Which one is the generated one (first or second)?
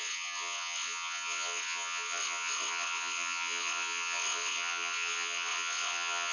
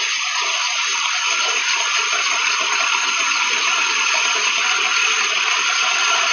first